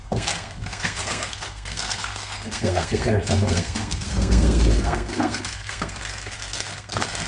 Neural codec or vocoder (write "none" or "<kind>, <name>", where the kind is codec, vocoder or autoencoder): codec, SNAC